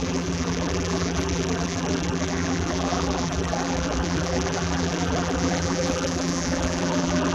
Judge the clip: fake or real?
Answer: fake